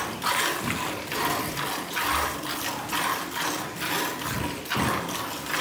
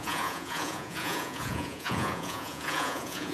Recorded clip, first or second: first